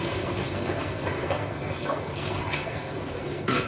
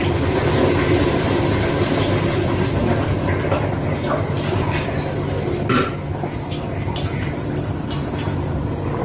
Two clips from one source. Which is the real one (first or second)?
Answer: second